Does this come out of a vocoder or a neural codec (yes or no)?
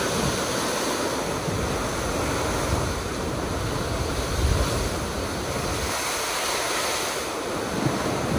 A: no